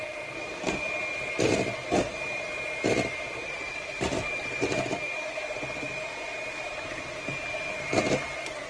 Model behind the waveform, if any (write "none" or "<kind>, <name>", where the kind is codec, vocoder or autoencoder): vocoder, BigVGAN v2